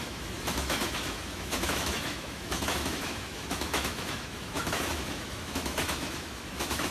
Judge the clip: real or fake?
fake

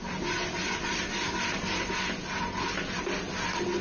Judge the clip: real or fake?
real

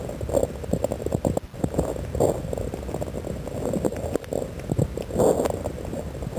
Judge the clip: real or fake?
real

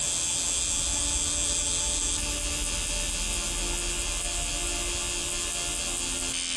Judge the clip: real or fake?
real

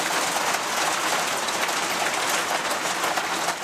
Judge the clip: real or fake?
real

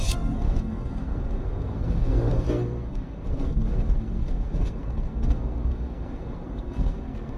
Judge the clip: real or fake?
fake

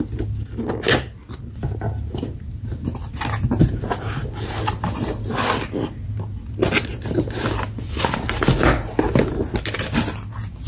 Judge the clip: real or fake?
real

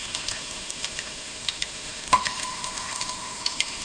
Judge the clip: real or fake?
fake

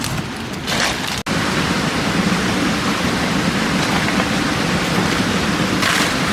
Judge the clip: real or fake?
real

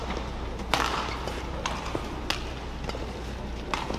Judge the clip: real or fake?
real